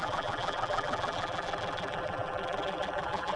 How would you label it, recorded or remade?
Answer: remade